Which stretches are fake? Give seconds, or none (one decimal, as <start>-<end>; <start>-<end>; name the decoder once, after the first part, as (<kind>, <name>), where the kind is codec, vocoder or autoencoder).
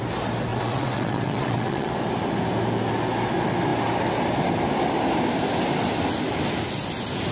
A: 0.5-1.9 (vocoder, WaveNeXt)